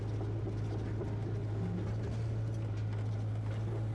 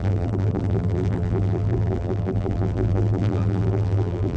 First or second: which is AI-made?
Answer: second